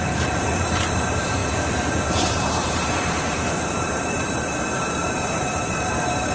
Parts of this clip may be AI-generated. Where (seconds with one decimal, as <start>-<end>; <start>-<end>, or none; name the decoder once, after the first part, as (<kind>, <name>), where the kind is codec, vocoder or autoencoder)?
0.0-6.3 (vocoder, BigVGAN v2)